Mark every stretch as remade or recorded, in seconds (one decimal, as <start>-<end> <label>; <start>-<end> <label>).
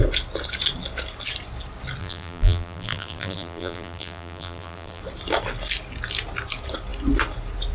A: 0.0-2.0 recorded; 2.0-5.0 remade; 5.0-7.7 recorded